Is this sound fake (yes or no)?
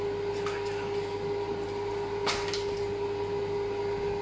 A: no